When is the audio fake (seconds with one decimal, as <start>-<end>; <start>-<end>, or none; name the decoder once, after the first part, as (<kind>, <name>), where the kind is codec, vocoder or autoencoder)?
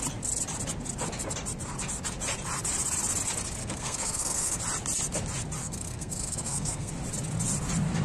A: 3.6-4.6 (codec, SNAC); 5.6-6.9